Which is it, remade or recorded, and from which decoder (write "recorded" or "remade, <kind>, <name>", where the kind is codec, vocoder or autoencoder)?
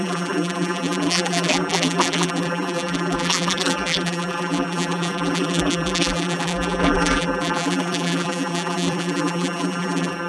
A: remade, vocoder, BigVGAN v2